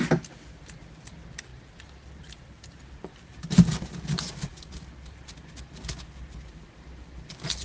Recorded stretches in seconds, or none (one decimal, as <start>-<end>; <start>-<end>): 0.0-1.5; 2.8-3.3; 3.8-7.6